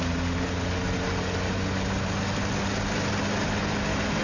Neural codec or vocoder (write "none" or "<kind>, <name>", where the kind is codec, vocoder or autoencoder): none